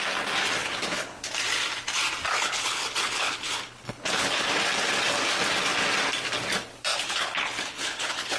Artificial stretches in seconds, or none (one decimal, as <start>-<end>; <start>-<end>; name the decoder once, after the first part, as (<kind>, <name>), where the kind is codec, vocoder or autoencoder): 0.6-1.3 (codec, HILCodec); 2.3-4.4; 6.9-8.4